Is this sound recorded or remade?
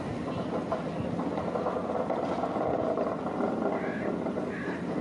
recorded